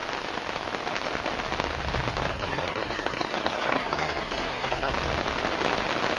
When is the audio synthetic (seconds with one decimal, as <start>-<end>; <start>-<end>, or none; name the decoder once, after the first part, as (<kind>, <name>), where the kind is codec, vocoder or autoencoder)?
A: 2.3-4.9 (codec, SNAC)